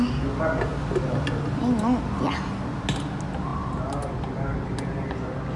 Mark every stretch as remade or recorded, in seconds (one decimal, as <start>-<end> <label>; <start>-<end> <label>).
0.0-5.6 recorded